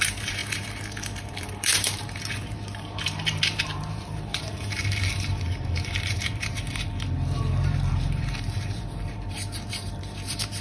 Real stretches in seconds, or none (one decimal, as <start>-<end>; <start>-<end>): none